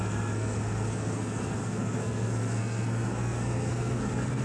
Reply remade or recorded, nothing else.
remade